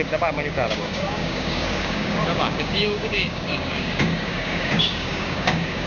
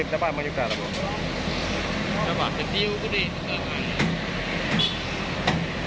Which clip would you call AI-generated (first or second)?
first